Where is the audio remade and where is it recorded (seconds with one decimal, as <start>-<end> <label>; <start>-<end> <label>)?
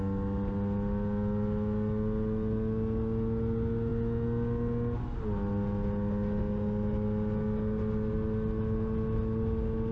0.0-9.9 recorded